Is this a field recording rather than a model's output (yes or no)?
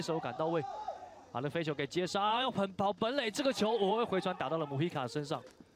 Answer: no